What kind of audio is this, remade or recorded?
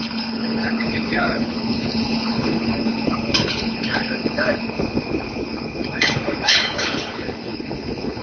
remade